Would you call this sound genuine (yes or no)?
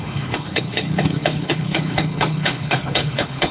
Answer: no